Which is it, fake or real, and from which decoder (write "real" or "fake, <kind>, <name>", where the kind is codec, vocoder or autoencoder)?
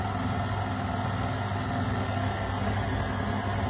real